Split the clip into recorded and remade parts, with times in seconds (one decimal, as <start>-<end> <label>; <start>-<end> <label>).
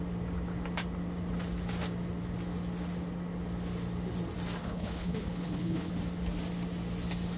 0.0-4.6 recorded; 4.6-5.9 remade; 5.9-7.4 recorded